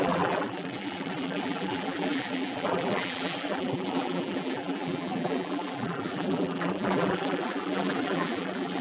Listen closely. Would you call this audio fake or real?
fake